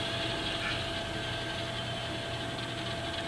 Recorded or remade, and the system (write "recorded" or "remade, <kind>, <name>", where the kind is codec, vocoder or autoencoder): recorded